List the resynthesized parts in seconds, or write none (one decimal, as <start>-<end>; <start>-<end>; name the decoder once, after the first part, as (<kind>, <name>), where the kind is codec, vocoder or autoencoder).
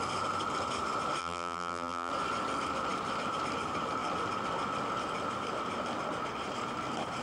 1.2-2.1 (vocoder, BigVGAN v2)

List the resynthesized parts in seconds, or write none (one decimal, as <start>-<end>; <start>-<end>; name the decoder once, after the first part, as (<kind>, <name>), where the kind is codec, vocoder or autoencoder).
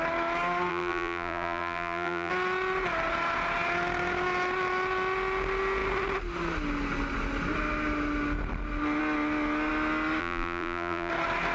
0.7-2.3 (vocoder, BigVGAN v2); 10.2-11.1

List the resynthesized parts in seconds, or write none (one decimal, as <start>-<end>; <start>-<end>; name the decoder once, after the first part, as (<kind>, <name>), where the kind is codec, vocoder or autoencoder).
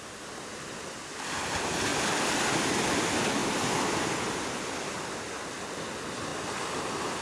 0.0-6.3 (vocoder, BigVGAN v2)